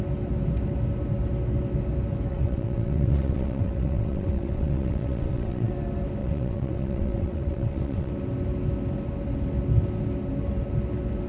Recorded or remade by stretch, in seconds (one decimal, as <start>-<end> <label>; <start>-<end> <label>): 0.0-2.3 recorded; 2.3-5.7 remade; 5.7-6.2 recorded; 6.2-8.1 remade; 8.1-11.3 recorded

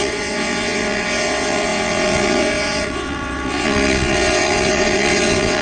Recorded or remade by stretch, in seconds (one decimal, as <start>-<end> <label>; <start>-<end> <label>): 0.0-5.6 remade

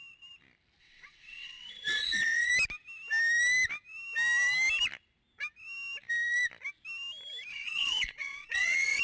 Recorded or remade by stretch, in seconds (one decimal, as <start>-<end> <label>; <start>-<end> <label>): 0.0-0.8 recorded; 0.8-2.5 remade; 2.5-7.5 recorded; 7.5-9.0 remade

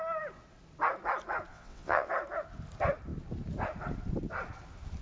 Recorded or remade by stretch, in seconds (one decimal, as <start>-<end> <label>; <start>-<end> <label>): 0.0-1.5 recorded; 1.5-2.1 remade; 2.1-5.0 recorded

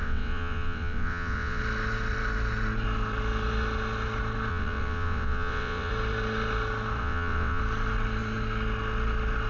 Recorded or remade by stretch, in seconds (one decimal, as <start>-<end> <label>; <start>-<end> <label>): 0.0-1.6 remade; 1.6-4.5 recorded; 4.5-5.9 remade; 5.9-7.0 recorded; 7.0-7.6 remade; 7.6-9.5 recorded

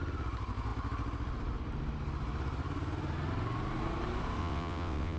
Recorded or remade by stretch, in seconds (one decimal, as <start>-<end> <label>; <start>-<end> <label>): 0.0-4.4 recorded; 4.4-5.2 remade